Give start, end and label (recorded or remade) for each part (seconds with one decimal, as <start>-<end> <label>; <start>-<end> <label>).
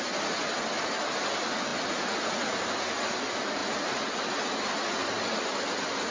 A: 0.0-6.1 recorded